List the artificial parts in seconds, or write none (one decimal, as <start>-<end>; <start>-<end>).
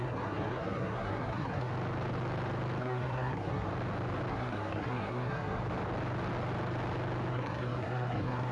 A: 0.0-1.7; 2.8-3.7; 4.3-5.6; 7.3-8.5